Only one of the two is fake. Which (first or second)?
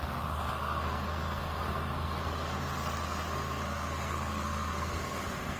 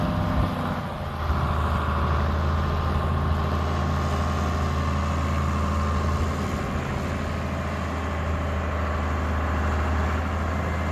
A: first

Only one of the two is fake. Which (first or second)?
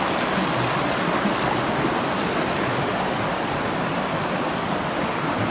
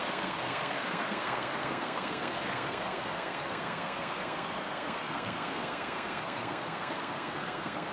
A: second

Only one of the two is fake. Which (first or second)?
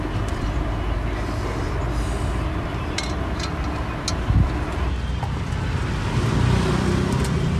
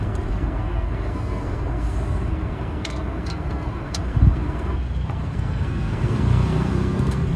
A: second